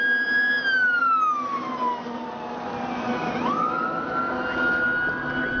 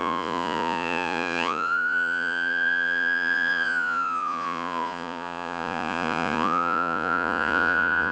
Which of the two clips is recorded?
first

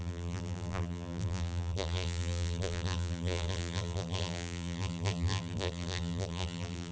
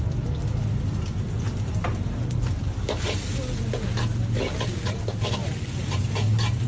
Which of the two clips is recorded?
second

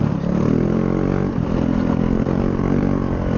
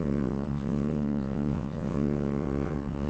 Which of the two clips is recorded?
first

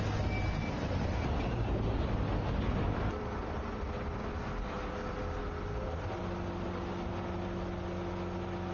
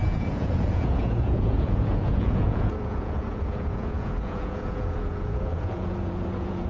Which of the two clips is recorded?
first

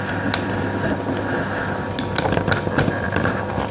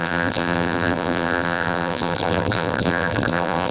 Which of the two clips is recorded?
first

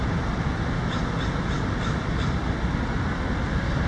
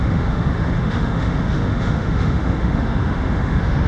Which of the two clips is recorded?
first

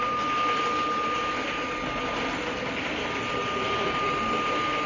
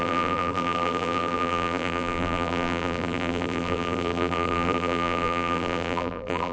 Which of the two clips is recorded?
first